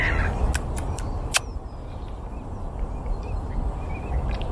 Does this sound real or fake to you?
real